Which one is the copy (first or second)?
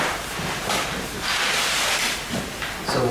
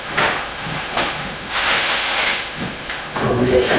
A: second